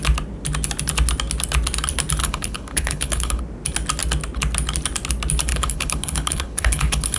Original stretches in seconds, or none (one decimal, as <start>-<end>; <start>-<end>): 0.0-2.2; 3.4-5.5